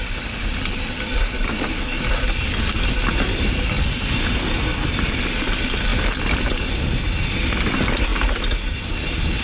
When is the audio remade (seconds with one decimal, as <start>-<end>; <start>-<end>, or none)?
none